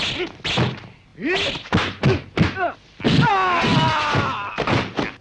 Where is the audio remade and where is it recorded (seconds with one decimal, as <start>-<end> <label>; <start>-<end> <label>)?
0.0-5.2 recorded

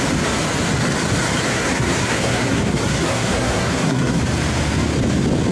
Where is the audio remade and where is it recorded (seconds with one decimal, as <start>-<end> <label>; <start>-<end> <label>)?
0.0-1.5 recorded; 1.5-4.2 remade; 4.2-5.5 recorded

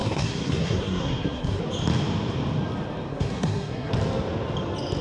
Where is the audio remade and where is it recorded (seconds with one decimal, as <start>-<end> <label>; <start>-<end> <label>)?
0.0-1.6 remade; 1.6-3.1 recorded; 3.1-3.9 remade; 3.9-5.0 recorded

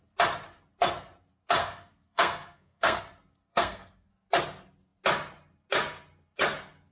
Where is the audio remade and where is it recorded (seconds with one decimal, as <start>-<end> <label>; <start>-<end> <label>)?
0.0-1.6 recorded; 1.6-3.0 remade; 3.0-3.5 recorded; 3.5-4.1 remade; 4.1-6.9 recorded